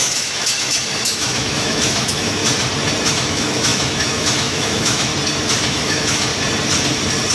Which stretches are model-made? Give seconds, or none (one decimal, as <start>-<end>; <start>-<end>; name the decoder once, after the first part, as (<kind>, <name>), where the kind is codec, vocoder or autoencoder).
0.0-2.4 (autoencoder, DAC-VAE); 3.1-5.1; 5.7-6.3